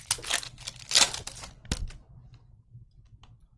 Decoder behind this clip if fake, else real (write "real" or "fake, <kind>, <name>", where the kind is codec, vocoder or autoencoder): real